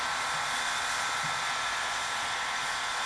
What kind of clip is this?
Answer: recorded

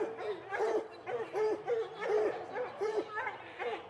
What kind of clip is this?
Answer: remade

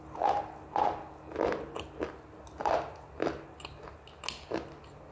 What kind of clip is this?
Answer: recorded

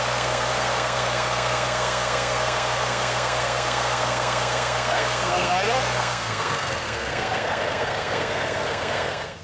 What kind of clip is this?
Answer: remade